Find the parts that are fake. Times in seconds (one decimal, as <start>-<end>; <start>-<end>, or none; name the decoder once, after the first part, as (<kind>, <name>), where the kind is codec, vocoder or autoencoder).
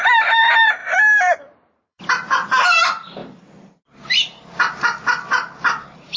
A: 0.8-2.0 (vocoder, BigVGAN v2)